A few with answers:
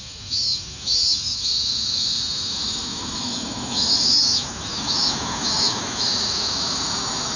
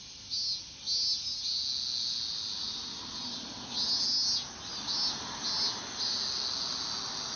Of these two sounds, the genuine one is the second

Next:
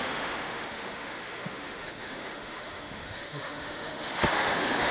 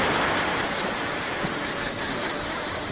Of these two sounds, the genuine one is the second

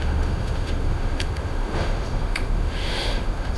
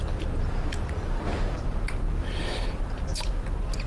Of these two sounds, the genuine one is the second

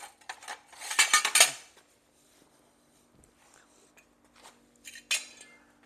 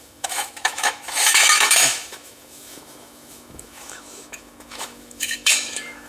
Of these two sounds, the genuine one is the first